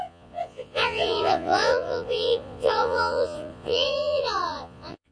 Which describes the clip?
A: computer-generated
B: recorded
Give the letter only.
A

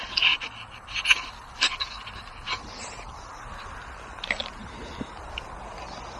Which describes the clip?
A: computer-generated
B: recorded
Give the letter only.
B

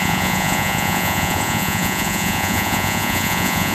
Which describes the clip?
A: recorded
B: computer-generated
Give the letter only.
B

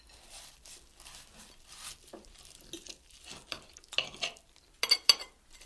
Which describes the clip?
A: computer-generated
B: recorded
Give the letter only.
B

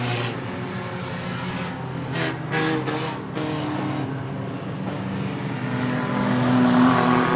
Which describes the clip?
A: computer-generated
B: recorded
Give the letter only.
B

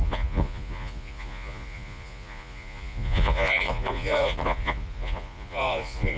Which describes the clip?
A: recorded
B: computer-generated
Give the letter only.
B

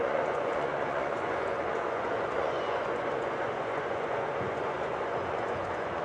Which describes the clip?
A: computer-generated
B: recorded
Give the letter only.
A